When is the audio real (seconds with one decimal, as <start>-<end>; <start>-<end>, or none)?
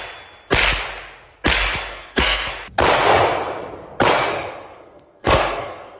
0.0-1.9; 2.5-4.3